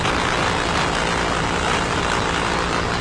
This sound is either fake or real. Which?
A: real